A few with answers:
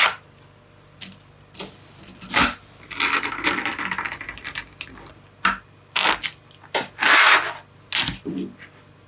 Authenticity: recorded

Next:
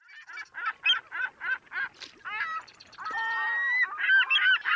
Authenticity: recorded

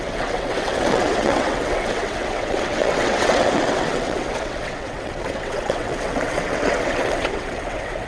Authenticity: remade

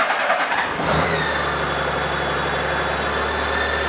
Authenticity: remade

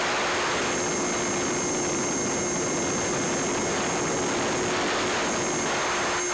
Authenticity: recorded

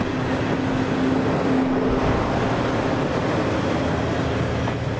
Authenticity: recorded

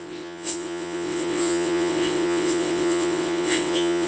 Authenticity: remade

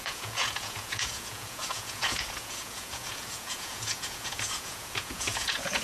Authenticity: remade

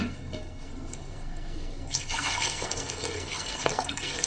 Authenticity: remade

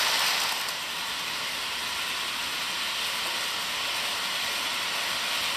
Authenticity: recorded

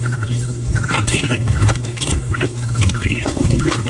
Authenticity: remade